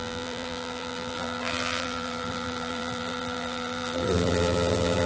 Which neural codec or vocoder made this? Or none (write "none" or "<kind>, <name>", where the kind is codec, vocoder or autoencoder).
vocoder, BigVGAN v2